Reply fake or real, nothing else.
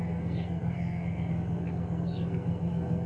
fake